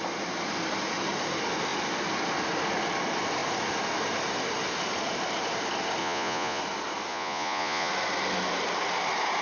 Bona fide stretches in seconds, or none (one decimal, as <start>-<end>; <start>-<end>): 0.0-6.0; 6.6-7.1; 7.9-9.4